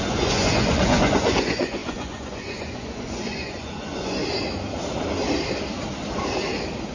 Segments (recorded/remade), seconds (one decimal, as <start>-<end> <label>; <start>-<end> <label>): 0.0-4.2 remade; 4.2-6.9 recorded